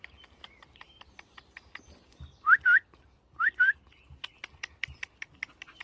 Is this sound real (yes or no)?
no